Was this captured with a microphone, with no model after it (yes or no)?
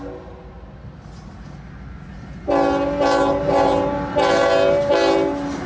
yes